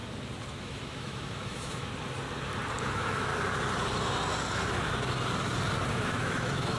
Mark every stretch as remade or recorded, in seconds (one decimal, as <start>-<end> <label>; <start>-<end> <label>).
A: 0.0-0.6 recorded; 0.6-1.9 remade; 1.9-2.8 recorded; 2.8-3.3 remade; 3.3-5.9 recorded; 5.9-6.8 remade